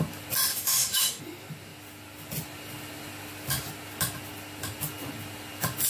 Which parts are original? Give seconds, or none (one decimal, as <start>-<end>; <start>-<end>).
0.0-0.5; 1.2-5.9